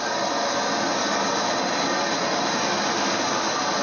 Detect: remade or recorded recorded